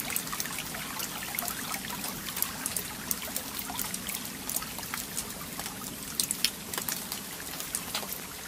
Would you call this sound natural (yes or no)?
yes